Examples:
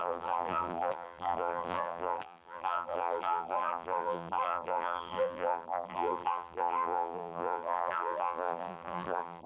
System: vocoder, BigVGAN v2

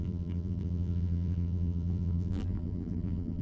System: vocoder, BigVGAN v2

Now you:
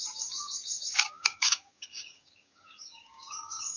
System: codec, DAC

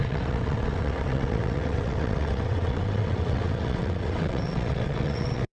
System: vocoder, WaveNeXt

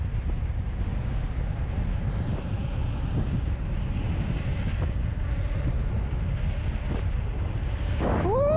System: none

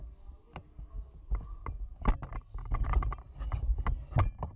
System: none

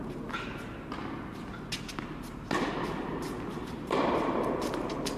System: none